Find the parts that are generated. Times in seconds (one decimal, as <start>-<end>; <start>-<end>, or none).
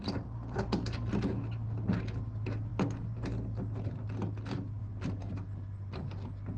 none